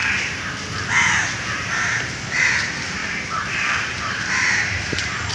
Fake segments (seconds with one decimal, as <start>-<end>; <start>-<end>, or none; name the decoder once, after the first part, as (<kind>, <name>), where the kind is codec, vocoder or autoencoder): 0.0-0.5 (vocoder, BigVGAN v2); 1.7-2.2; 3.0-5.3